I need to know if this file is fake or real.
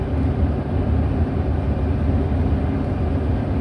real